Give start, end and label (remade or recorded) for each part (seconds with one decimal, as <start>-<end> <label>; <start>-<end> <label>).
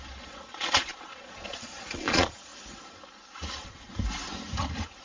0.0-2.5 remade; 2.5-3.5 recorded; 3.5-3.9 remade; 3.9-5.0 recorded